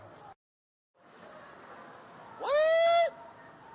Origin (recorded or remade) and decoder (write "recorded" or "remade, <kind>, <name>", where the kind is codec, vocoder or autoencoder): recorded